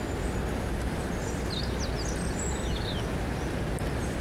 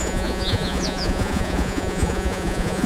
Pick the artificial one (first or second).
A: second